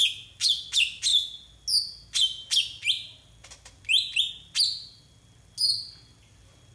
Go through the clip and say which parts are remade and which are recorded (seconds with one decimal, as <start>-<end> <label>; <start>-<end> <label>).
0.0-6.7 recorded